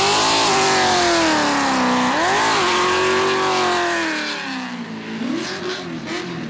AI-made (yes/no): no